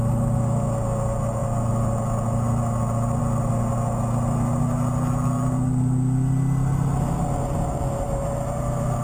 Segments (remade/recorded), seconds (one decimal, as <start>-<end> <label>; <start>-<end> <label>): 0.0-9.0 recorded